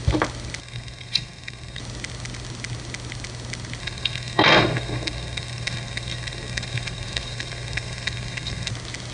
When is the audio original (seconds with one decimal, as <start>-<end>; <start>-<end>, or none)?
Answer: 0.0-0.6; 1.8-3.8; 8.7-9.1